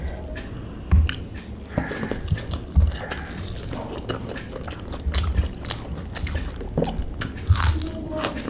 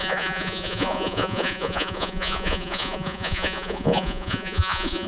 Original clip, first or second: first